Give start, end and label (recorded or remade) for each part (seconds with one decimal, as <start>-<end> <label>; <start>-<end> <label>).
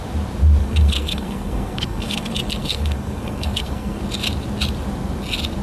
0.0-0.6 recorded; 0.6-4.0 remade; 4.0-5.6 recorded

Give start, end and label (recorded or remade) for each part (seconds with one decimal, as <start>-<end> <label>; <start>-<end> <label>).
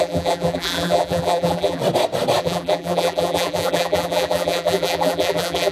0.0-1.8 remade; 1.8-2.4 recorded; 2.4-5.7 remade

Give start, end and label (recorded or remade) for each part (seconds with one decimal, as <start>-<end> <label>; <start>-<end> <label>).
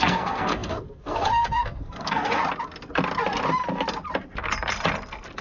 0.0-2.4 remade; 2.4-5.4 recorded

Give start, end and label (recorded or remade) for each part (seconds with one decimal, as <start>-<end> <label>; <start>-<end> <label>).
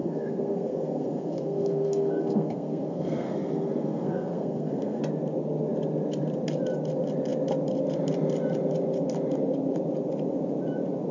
0.0-5.0 remade; 5.0-11.1 recorded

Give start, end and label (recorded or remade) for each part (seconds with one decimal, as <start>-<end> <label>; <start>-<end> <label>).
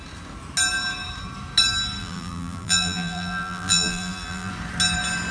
0.0-2.0 recorded; 2.0-4.5 remade; 4.5-5.3 recorded